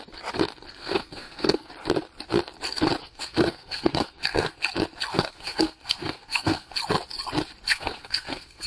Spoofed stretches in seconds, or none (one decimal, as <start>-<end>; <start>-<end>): 0.8-1.7; 3.0-4.6; 5.1-6.7; 7.7-8.7